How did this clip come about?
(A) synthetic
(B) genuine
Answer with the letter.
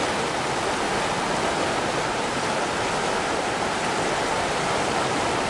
A